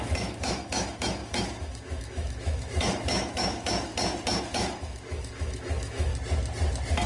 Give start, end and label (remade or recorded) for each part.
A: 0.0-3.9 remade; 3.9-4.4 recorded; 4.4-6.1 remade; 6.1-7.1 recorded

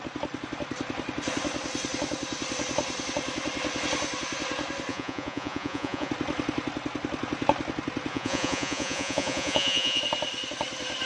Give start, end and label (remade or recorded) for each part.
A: 0.0-4.9 recorded; 4.9-6.1 remade; 6.1-8.1 recorded; 8.1-10.0 remade; 10.0-11.1 recorded

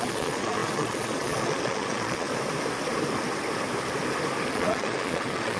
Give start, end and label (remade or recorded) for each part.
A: 0.0-2.3 remade; 2.3-4.5 recorded; 4.5-5.6 remade

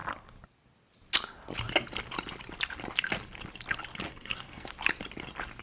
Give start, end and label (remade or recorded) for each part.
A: 0.0-4.1 recorded; 4.1-4.7 remade; 4.7-5.6 recorded

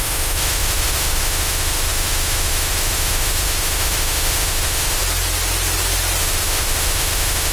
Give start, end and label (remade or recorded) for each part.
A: 0.0-5.0 remade; 5.0-6.2 recorded; 6.2-7.5 remade

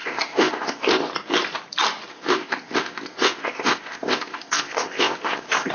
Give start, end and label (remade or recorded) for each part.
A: 0.0-1.1 remade; 1.1-2.1 recorded; 2.1-5.7 remade